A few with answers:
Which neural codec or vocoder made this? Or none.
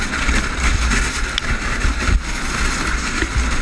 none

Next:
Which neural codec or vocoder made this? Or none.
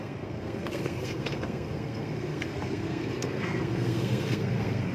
codec, SNAC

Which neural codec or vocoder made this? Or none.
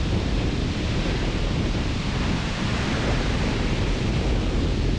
vocoder, BigVGAN v2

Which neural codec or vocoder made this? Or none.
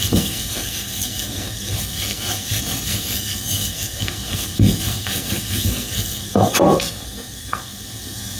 codec, SNAC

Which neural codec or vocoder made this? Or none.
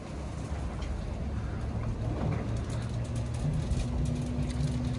none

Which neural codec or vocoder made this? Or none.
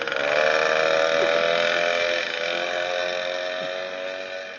none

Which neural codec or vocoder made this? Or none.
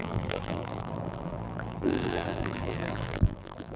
vocoder, BigVGAN v2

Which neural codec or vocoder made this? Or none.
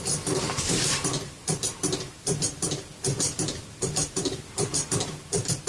vocoder, BigVGAN v2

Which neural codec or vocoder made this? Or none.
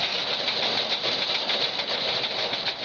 none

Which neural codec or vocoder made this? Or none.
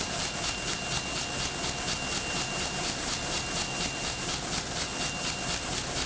none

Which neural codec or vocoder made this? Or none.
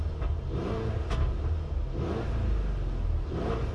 none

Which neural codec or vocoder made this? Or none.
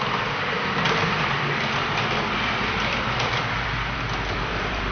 vocoder, BigVGAN v2